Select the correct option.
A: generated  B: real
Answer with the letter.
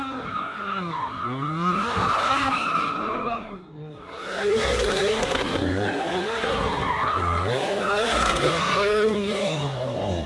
A